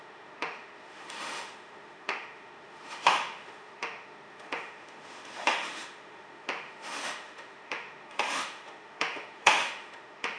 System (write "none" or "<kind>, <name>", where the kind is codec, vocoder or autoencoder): autoencoder, DAC-VAE